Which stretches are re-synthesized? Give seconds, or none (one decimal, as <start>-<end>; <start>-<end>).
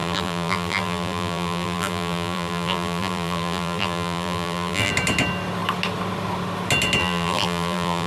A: 0.0-4.9; 7.0-8.1